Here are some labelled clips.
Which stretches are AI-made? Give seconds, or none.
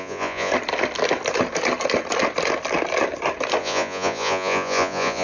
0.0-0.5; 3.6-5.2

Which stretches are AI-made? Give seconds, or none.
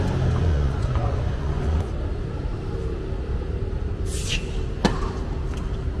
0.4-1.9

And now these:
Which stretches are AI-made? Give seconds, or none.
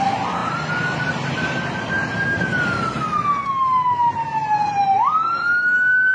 none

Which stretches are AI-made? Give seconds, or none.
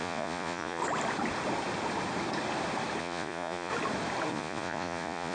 0.0-0.8; 3.0-3.7; 4.3-5.3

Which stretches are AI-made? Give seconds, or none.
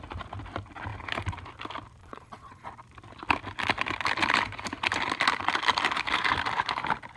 2.0-2.7